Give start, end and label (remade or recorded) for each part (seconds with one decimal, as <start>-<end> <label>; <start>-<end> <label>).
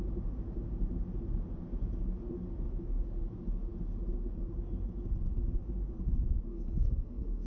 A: 0.0-6.5 recorded; 6.5-7.5 remade